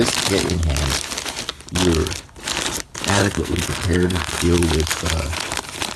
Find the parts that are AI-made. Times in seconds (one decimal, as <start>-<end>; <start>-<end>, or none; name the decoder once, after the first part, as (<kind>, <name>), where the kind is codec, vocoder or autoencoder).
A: 3.2-4.4 (codec, SNAC)